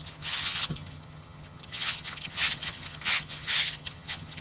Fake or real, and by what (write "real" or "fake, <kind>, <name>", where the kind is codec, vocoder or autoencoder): fake, vocoder, HiFi-GAN